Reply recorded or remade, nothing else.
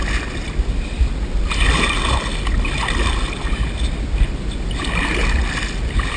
recorded